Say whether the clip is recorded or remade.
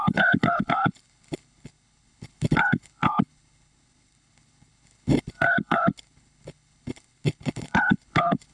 remade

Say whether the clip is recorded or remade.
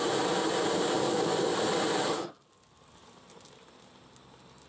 recorded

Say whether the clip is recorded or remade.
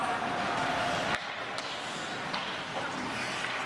recorded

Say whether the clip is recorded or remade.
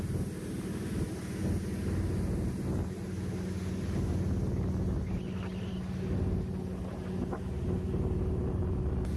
recorded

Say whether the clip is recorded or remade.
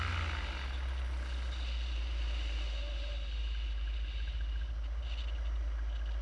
recorded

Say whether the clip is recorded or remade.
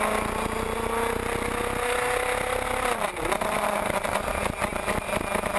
recorded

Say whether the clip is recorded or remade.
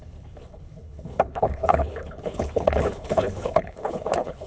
remade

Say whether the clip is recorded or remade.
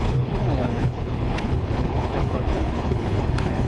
remade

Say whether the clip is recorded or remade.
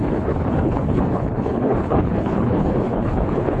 remade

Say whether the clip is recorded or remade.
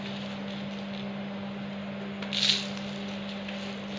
recorded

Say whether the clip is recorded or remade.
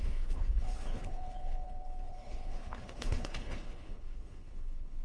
remade